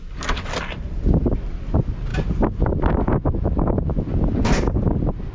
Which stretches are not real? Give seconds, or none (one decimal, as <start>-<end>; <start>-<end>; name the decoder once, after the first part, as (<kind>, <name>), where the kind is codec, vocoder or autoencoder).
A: none